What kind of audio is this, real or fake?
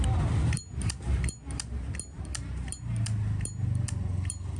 real